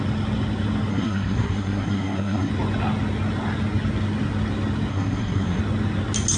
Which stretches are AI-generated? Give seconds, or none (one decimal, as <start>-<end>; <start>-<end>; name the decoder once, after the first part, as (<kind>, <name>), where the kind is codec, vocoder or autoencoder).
0.9-2.5 (codec, SNAC); 4.9-5.6